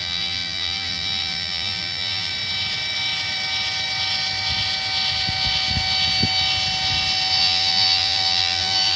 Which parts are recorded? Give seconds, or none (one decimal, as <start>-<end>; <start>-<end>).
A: 2.3-7.4